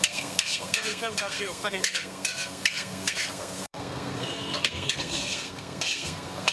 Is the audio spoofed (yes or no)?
yes